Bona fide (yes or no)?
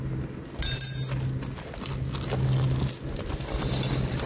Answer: yes